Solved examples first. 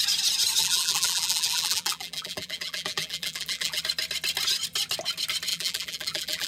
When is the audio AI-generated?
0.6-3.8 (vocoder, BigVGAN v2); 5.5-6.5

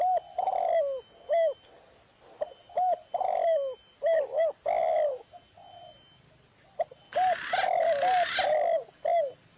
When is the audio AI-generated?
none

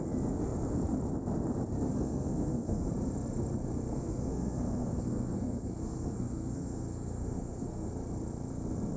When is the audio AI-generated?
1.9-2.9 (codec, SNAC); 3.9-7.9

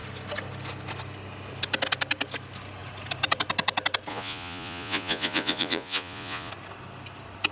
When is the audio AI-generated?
4.1-6.5 (vocoder, Vocos)

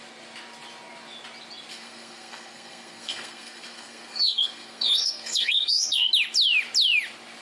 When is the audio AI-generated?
1.7-6.1 (codec, SNAC)